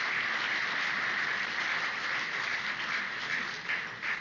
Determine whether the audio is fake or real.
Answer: real